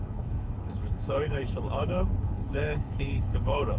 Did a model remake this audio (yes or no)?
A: yes